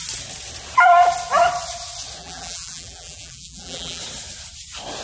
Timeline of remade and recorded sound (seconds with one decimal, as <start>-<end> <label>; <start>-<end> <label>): 0.0-2.2 recorded; 2.2-4.0 remade; 4.0-5.0 recorded